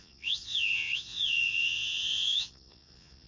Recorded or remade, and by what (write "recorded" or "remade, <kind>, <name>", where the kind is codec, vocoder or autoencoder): remade, vocoder, Vocos